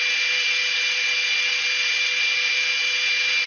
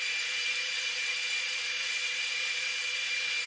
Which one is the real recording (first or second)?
first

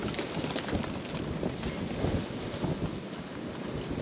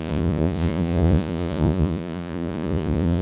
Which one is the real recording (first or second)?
first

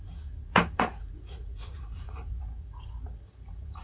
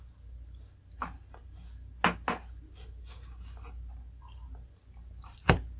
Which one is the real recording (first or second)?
second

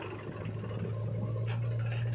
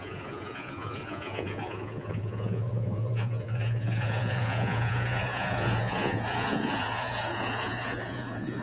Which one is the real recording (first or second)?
first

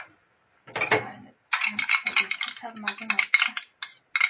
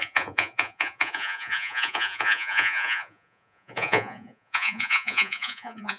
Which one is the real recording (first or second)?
first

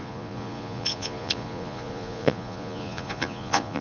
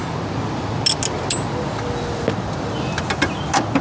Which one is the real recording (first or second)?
second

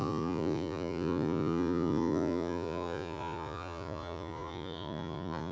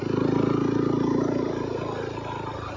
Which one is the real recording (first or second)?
second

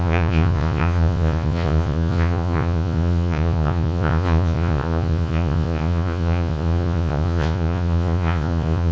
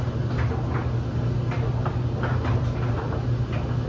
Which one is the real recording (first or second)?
second